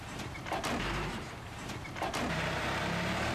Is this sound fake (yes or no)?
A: yes